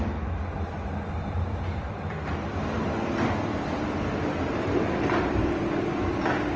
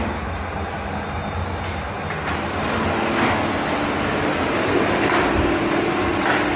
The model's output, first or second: first